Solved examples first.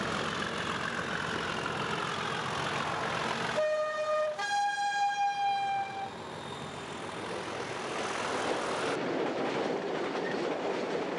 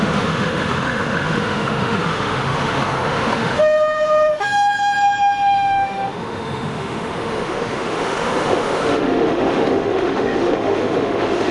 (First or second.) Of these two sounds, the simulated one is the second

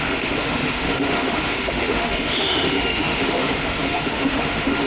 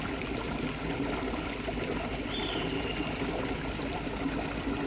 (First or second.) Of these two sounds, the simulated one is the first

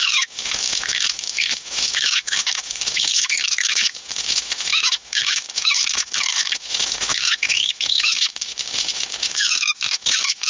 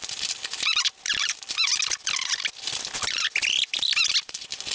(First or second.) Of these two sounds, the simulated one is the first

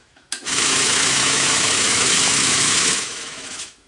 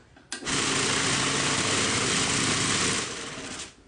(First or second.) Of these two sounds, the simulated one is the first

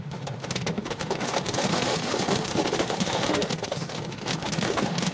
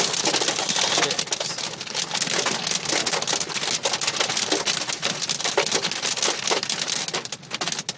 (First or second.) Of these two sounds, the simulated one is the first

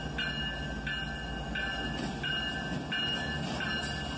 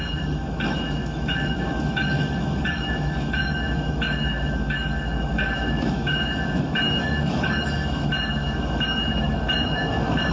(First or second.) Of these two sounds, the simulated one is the second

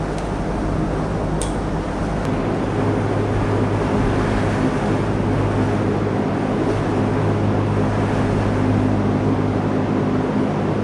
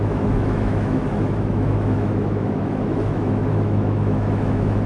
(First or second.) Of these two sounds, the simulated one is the second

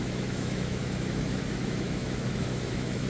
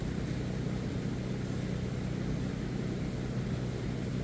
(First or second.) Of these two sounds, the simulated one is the first